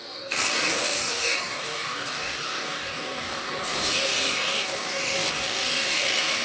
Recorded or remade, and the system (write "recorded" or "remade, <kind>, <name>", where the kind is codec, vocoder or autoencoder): remade, codec, DAC